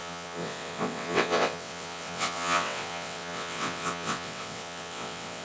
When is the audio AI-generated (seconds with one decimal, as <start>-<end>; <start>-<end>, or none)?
0.0-5.4